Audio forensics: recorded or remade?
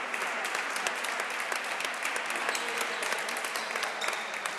recorded